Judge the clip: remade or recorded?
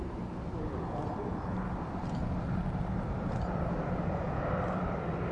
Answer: recorded